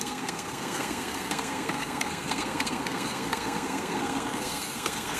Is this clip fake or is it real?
fake